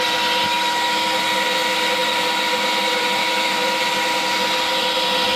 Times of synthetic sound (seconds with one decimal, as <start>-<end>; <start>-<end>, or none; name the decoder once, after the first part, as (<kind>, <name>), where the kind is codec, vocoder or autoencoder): 3.2-3.8 (autoencoder, DAC-VAE)